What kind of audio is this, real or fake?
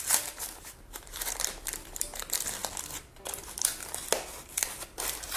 fake